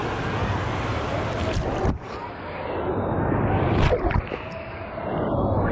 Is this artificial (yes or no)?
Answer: no